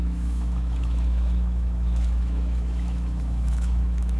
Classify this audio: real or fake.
fake